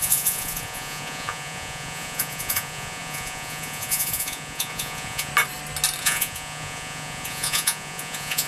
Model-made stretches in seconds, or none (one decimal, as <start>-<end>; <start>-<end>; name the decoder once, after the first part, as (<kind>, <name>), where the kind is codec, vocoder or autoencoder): 0.0-5.3 (vocoder, Vocos); 6.0-8.5